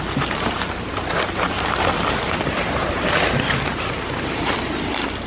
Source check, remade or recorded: recorded